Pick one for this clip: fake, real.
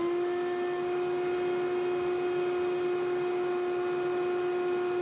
real